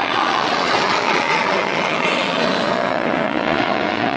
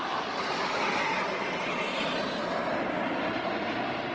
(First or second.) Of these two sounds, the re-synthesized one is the first